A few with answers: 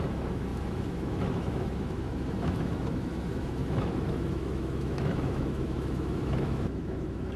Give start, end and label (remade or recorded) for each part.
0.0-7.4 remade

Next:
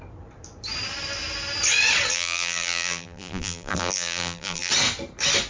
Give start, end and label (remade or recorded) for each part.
0.0-2.1 recorded; 2.1-4.7 remade; 4.7-5.5 recorded

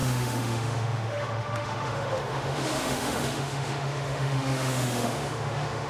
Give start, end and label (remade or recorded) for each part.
0.0-5.9 remade

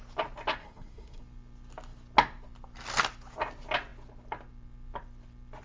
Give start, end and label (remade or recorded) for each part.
0.0-0.6 recorded; 0.6-1.2 remade; 1.2-5.6 recorded

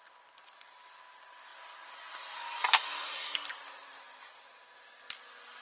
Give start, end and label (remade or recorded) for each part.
0.0-5.6 recorded

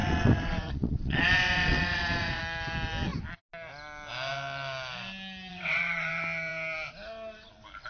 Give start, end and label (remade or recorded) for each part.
0.0-2.4 remade; 2.4-5.5 recorded; 5.5-6.1 remade; 6.1-7.9 recorded

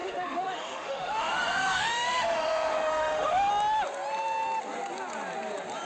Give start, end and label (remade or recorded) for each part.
0.0-3.5 remade; 3.5-5.8 recorded

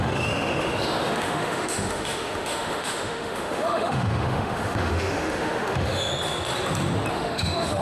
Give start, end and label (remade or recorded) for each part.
0.0-6.1 remade; 6.1-7.1 recorded; 7.1-7.8 remade